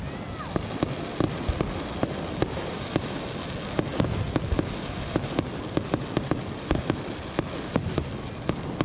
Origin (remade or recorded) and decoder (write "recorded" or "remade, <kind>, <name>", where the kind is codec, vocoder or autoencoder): recorded